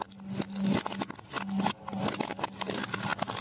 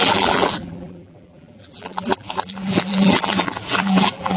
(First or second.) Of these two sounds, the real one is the first